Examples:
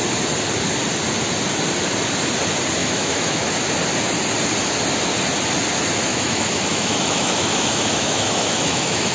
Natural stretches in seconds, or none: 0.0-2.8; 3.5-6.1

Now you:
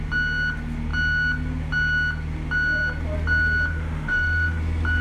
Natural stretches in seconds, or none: 0.0-3.7; 4.6-5.0

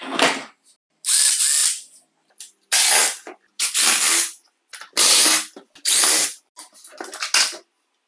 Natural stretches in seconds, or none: 0.0-8.1

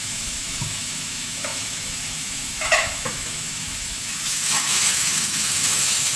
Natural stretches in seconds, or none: none

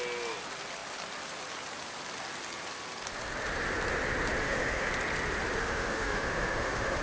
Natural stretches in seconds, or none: 0.0-4.4; 4.9-5.6

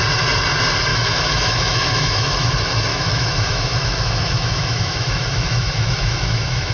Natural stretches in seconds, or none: 0.0-0.9; 2.5-2.9

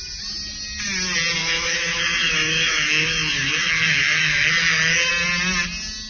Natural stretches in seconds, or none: 0.0-1.4; 5.1-6.1

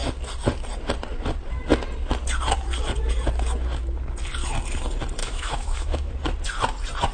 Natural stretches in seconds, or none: 0.0-5.2; 6.1-7.1